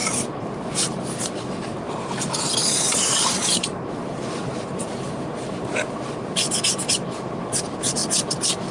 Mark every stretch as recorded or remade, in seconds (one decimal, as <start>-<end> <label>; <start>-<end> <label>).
0.0-2.1 remade; 2.1-2.9 recorded; 2.9-7.6 remade; 7.6-8.7 recorded

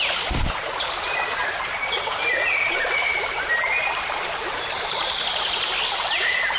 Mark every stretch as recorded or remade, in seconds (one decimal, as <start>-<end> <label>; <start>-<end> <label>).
0.0-3.0 recorded; 3.0-5.5 remade; 5.5-6.6 recorded